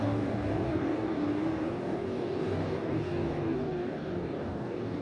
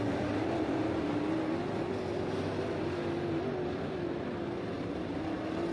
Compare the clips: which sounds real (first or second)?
second